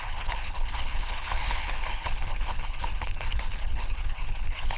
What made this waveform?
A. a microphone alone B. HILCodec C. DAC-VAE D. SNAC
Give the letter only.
B